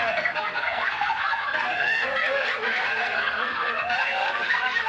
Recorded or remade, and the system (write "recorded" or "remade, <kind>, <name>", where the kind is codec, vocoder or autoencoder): remade, codec, SNAC